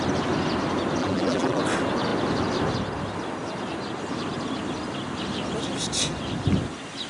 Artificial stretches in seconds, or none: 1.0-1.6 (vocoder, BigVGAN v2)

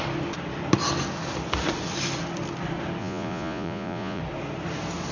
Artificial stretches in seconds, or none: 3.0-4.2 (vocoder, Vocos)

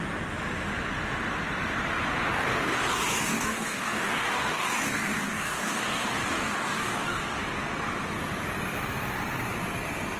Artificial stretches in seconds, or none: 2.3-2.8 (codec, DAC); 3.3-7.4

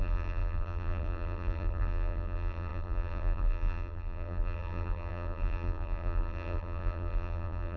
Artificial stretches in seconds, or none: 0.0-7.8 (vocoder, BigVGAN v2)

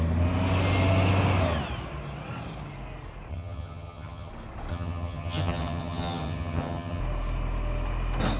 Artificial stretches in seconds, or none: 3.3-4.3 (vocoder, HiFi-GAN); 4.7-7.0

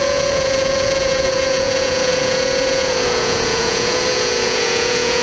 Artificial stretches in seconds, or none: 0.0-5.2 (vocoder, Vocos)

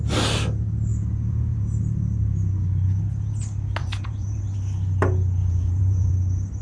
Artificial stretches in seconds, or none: 0.9-1.8 (vocoder, Vocos); 3.8-4.4; 5.4-6.1

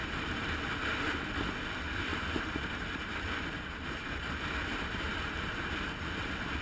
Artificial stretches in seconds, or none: 0.0-0.6 (vocoder, BigVGAN v2); 2.1-4.5; 5.1-5.7